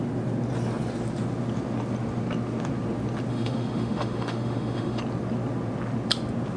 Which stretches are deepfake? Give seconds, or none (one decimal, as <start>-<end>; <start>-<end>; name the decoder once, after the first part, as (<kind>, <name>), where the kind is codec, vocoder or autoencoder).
3.3-5.0 (autoencoder, DAC-VAE)